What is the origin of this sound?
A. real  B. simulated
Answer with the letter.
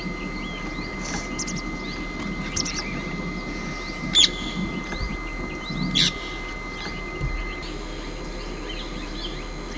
A